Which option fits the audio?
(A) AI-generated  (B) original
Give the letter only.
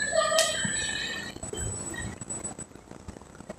B